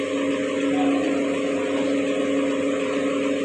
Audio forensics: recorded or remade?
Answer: recorded